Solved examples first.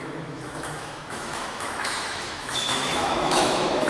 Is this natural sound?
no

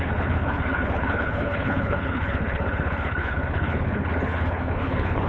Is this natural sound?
no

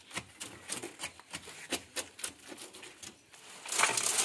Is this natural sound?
yes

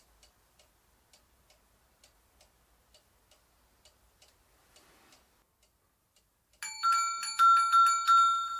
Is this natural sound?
yes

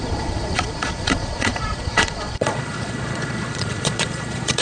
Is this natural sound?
no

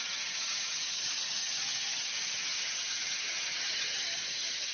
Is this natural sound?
no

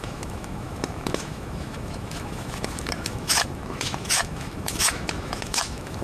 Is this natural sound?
no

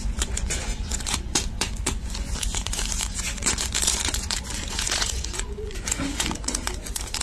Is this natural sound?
no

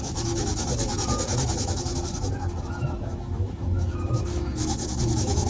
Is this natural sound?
no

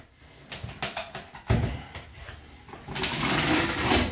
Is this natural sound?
yes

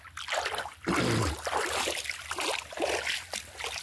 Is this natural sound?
yes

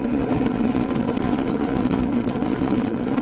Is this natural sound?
no